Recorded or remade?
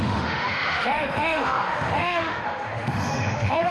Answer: remade